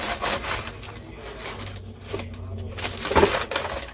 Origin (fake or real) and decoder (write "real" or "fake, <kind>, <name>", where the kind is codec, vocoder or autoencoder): real